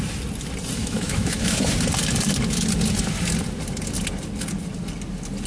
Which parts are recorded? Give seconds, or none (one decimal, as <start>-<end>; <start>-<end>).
0.0-0.8; 1.6-5.5